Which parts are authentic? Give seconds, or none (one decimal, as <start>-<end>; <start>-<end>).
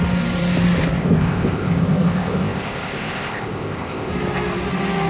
0.0-1.0; 4.1-5.1